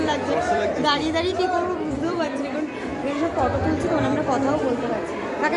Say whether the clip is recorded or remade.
remade